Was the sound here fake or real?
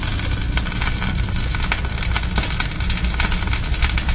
real